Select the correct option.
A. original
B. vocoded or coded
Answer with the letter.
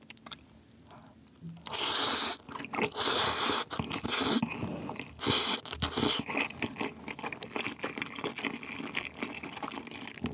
A